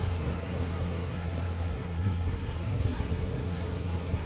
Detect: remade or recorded remade